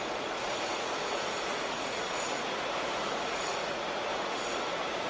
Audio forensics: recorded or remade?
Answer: remade